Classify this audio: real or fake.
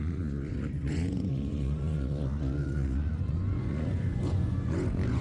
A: fake